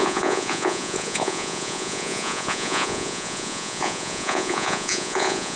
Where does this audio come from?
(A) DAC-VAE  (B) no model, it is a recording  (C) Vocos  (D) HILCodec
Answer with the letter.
C